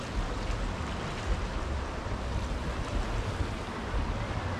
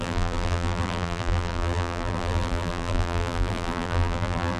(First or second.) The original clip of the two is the first